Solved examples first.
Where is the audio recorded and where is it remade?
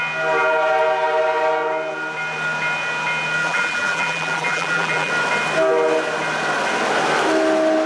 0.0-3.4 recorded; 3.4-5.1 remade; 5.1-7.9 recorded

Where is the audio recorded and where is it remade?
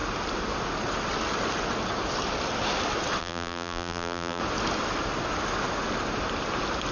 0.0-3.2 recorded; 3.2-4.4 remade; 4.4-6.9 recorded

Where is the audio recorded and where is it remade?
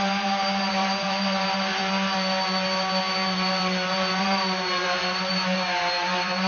0.0-1.8 remade; 1.8-4.2 recorded; 4.2-6.5 remade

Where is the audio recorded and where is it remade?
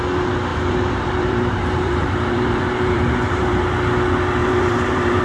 0.0-0.5 recorded; 0.5-3.6 remade; 3.6-4.4 recorded; 4.4-5.2 remade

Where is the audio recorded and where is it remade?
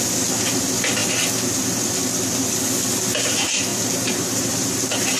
0.0-3.7 recorded; 3.7-4.8 remade; 4.8-5.2 recorded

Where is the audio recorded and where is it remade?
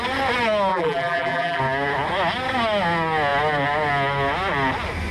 0.0-0.7 recorded; 0.7-1.6 remade; 1.6-5.1 recorded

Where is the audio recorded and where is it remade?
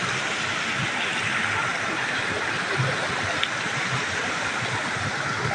0.0-1.7 recorded; 1.7-5.0 remade; 5.0-5.5 recorded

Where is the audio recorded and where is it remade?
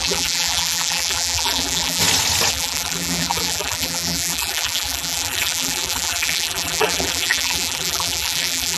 0.0-2.0 remade; 2.0-2.5 recorded; 2.5-8.8 remade